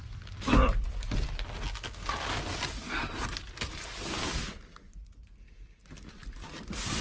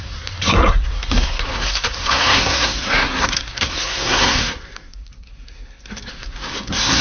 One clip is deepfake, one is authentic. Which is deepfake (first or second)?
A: second